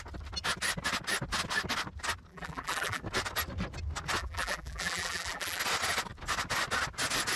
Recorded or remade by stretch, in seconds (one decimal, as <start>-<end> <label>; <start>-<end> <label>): 0.0-2.3 recorded; 2.3-3.0 remade; 3.0-4.2 recorded; 4.2-5.6 remade; 5.6-7.4 recorded